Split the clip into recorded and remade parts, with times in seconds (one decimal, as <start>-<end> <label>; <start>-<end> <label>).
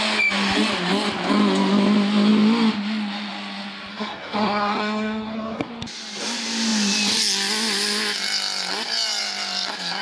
0.0-3.9 recorded; 3.9-5.7 remade; 5.7-10.0 recorded